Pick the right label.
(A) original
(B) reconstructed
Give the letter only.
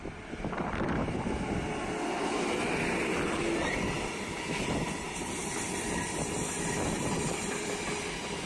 A